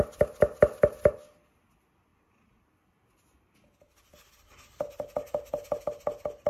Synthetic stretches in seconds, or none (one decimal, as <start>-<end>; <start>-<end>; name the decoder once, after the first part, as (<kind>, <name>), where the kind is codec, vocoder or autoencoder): none